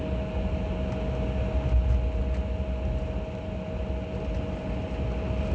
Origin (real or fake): real